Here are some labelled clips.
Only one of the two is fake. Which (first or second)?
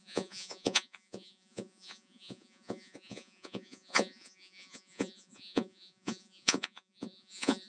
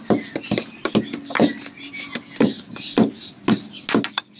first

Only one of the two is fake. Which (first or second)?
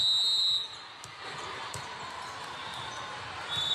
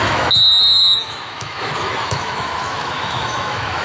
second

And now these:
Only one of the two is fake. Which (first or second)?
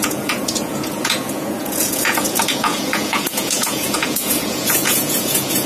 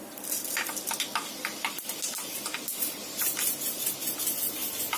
first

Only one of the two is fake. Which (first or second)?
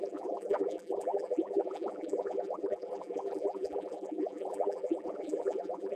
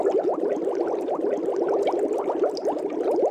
first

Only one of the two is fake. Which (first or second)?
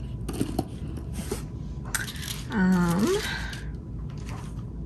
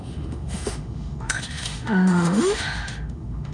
second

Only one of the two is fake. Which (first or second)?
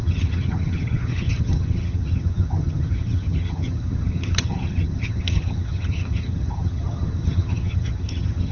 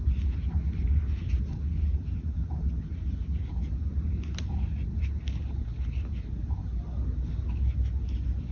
first